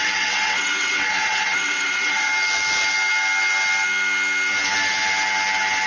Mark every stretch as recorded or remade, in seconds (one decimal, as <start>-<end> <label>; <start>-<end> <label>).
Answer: 0.0-2.3 remade; 2.3-5.9 recorded